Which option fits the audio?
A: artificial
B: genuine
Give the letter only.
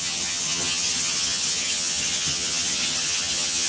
A